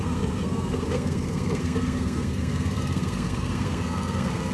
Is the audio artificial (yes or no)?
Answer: yes